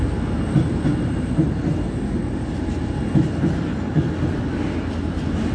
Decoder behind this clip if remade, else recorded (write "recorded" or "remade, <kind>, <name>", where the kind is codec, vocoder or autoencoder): recorded